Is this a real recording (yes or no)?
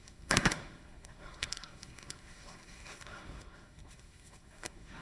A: no